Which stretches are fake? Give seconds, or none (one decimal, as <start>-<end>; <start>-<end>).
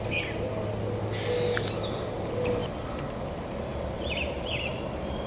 none